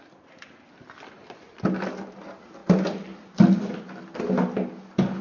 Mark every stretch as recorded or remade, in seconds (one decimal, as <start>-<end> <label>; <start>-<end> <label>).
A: 0.0-5.2 recorded